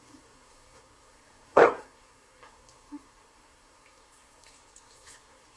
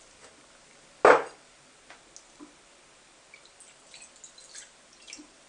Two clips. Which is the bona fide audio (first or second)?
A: second